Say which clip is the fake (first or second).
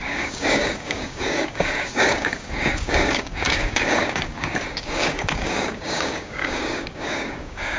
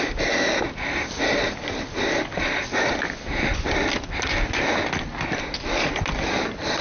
first